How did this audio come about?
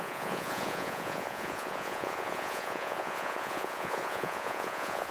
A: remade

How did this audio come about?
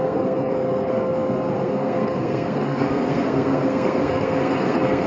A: remade